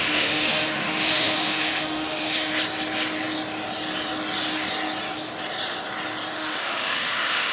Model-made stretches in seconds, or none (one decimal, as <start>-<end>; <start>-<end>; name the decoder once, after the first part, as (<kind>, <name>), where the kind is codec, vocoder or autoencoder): 0.0-2.5 (autoencoder, DAC-VAE); 6.3-7.5

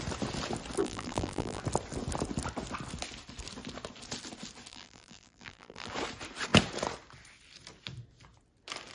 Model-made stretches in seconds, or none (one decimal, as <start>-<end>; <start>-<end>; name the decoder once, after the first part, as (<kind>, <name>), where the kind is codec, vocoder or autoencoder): 0.8-1.6 (vocoder, BigVGAN v2); 4.7-5.9

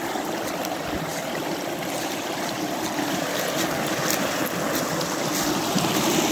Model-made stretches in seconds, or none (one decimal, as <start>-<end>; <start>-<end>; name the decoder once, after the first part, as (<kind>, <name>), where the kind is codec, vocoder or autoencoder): 1.1-3.4 (vocoder, BigVGAN v2)

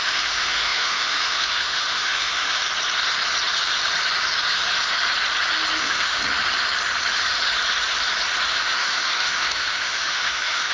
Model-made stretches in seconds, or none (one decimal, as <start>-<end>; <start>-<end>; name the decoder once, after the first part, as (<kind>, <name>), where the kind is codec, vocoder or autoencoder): 0.0-2.6 (autoencoder, DAC-VAE); 5.8-6.2; 8.5-10.7

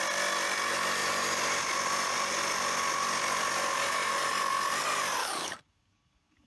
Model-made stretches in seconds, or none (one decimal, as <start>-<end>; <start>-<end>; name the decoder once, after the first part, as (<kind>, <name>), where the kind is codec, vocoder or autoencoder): 5.2-6.5 (codec, DAC)

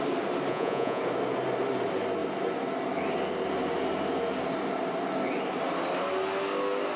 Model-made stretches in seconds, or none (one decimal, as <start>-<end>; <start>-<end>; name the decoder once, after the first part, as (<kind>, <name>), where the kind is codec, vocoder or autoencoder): 0.5-1.0 (vocoder, Vocos)